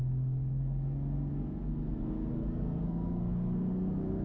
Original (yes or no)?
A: no